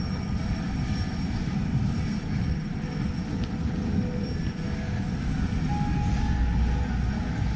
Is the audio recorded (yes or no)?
yes